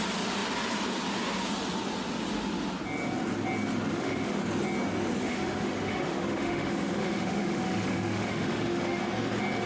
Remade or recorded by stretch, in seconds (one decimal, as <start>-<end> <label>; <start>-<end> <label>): 0.0-3.9 recorded; 3.9-4.4 remade; 4.4-5.2 recorded; 5.2-9.0 remade; 9.0-9.7 recorded